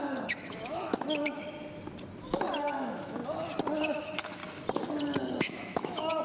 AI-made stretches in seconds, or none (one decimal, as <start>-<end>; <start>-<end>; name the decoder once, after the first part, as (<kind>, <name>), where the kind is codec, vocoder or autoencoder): 0.0-1.4 (autoencoder, DAC-VAE); 2.2-3.2; 3.9-4.4; 5.4-6.2